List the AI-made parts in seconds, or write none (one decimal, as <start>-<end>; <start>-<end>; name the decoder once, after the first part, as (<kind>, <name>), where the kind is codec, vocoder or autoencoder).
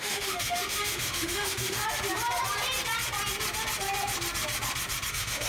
0.0-1.8 (autoencoder, DAC-VAE); 5.1-5.5